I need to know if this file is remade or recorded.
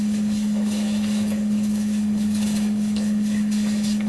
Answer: remade